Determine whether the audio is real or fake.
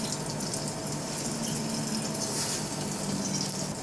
real